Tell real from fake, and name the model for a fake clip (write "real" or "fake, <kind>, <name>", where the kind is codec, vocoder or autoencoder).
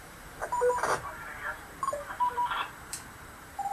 fake, vocoder, BigVGAN v2